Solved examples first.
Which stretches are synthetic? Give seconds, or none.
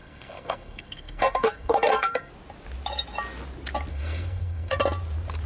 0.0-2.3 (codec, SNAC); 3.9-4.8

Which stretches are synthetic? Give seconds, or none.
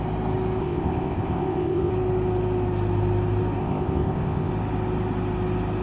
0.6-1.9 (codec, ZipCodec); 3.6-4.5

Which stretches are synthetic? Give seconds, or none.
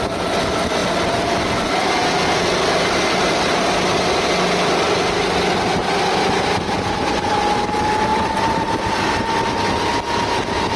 none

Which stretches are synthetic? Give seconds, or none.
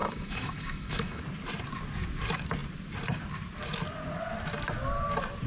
0.0-1.2 (autoencoder, DAC-VAE)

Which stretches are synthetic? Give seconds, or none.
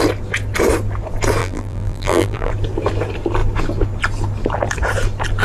1.4-2.5 (vocoder, BigVGAN v2)